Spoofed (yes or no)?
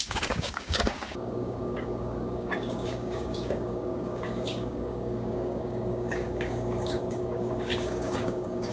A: yes